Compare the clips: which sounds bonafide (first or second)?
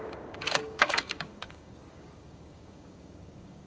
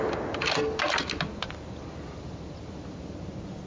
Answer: second